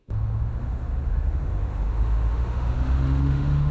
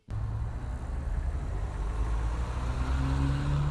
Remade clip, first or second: first